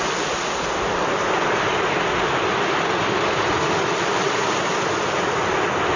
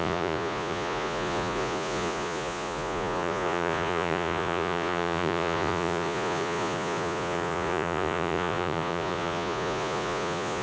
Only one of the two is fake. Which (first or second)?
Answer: second